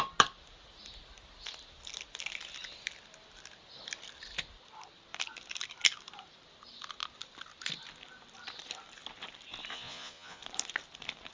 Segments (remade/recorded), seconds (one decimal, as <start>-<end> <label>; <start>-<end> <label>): 0.0-9.7 recorded; 9.7-10.4 remade; 10.4-11.3 recorded